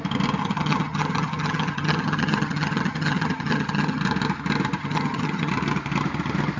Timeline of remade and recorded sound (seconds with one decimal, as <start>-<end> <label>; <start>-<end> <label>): 0.0-0.4 recorded; 0.4-4.0 remade; 4.0-4.8 recorded; 4.8-5.5 remade; 5.5-6.6 recorded